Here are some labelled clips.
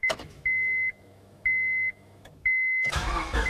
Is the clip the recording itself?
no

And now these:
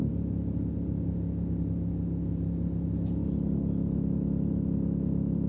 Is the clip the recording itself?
yes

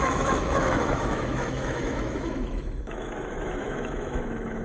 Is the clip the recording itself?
no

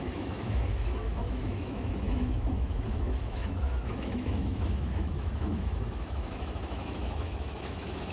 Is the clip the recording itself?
no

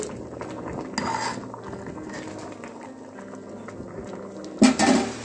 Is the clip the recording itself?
yes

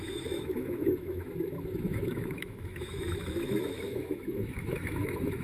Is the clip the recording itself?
no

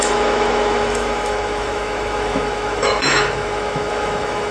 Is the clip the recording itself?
no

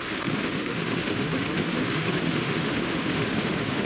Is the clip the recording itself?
no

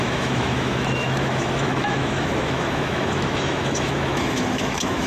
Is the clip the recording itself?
no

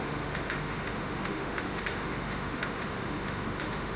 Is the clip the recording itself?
no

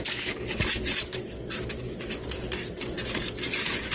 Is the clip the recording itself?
yes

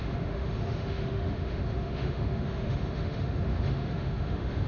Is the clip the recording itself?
no